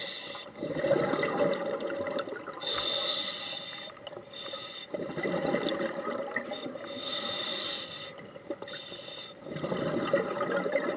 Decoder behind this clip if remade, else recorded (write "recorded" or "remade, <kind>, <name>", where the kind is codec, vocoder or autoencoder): recorded